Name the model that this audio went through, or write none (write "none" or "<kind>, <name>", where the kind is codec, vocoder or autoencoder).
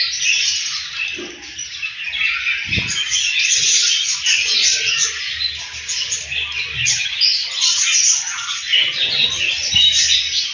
none